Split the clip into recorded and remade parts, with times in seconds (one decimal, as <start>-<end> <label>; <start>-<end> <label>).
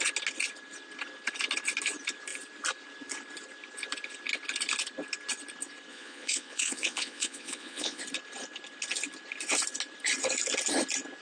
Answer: 0.0-5.9 recorded; 5.9-8.0 remade; 8.0-11.2 recorded